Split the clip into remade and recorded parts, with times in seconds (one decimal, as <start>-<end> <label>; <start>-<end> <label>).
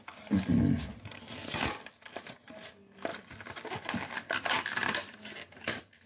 0.0-6.1 recorded